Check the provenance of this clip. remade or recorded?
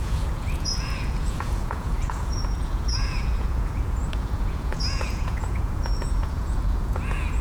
remade